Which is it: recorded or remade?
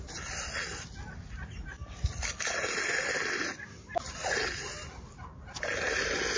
recorded